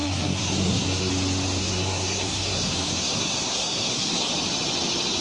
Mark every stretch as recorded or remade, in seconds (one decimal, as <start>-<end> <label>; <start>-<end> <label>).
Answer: 0.0-1.1 remade; 1.1-1.6 recorded; 1.6-4.3 remade; 4.3-5.2 recorded